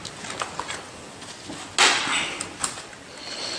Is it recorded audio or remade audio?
recorded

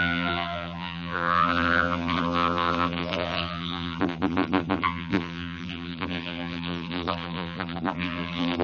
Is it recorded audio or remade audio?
remade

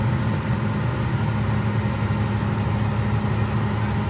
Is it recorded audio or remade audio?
recorded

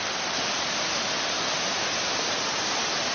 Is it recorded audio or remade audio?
recorded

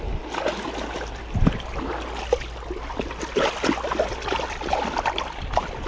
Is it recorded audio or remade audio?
recorded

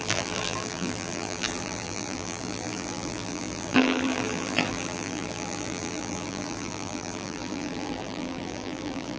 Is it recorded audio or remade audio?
remade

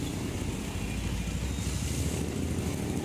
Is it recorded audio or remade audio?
recorded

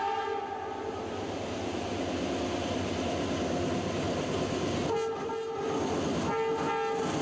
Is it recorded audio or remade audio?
recorded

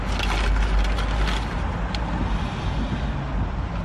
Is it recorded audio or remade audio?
recorded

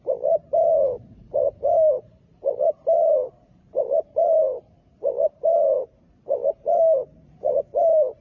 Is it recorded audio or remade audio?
remade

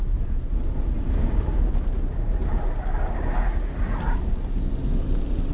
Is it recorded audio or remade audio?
recorded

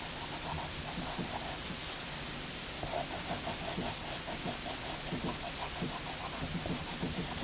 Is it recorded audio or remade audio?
remade